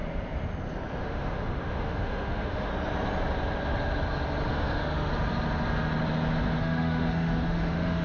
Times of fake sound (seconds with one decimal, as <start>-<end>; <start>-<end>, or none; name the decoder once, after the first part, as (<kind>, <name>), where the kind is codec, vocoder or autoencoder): 1.0-2.7 (autoencoder, DAC-VAE); 4.5-5.1; 6.6-8.0